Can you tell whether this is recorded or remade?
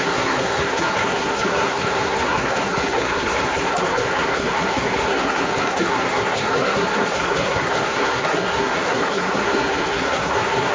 remade